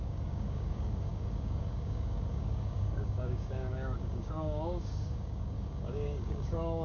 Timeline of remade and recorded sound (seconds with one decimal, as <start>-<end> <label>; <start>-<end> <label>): 0.0-6.8 remade